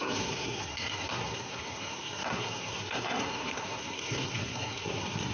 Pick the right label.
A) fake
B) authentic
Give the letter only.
A